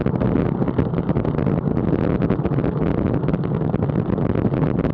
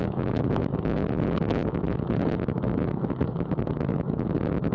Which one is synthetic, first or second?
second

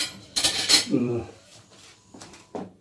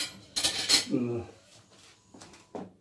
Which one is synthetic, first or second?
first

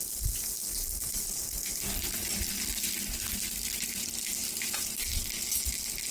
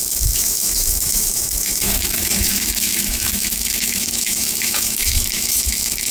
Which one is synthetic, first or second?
second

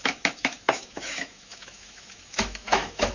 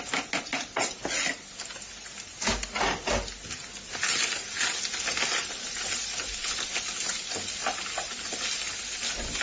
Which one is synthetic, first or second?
first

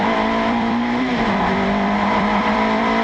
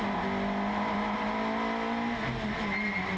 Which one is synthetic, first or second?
first